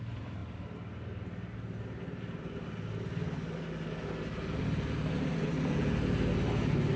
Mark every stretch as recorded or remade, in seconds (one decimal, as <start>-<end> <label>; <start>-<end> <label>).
0.0-7.0 recorded